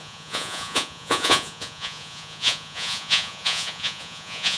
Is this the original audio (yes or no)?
no